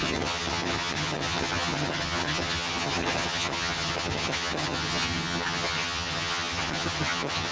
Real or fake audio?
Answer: fake